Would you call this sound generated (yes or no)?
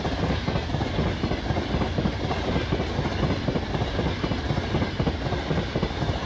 no